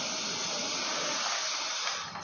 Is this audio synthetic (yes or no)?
no